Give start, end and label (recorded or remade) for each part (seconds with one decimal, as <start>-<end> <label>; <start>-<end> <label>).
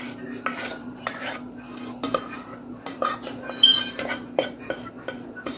0.0-0.8 recorded; 0.8-1.5 remade; 1.5-5.6 recorded